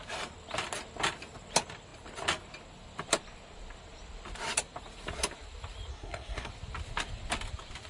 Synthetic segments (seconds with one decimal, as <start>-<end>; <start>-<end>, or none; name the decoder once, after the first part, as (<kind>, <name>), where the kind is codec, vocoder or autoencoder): 5.9-6.5 (codec, SNAC)